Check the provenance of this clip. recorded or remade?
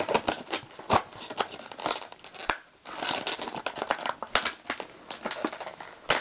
recorded